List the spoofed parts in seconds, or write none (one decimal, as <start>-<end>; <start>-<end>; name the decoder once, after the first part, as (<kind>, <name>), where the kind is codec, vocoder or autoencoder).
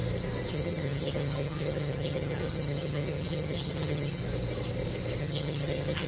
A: 0.5-4.2 (vocoder, HiFi-GAN); 5.2-6.1